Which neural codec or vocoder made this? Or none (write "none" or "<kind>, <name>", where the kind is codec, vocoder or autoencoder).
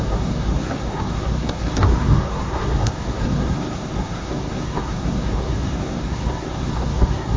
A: codec, SNAC